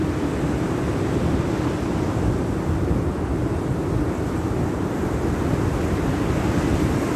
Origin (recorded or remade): recorded